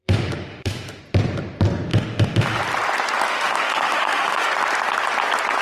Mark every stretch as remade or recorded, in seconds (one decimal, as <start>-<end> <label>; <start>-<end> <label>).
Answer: 0.0-1.0 remade; 1.0-1.9 recorded; 1.9-2.6 remade; 2.6-3.3 recorded; 3.3-4.5 remade; 4.5-5.6 recorded